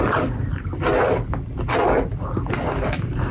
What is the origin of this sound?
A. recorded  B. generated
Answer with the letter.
A